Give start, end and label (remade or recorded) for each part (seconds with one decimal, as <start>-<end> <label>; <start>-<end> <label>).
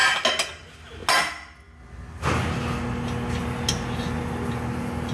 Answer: 0.0-5.1 recorded